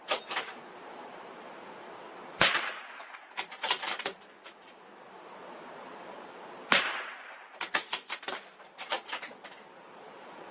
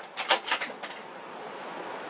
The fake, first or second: first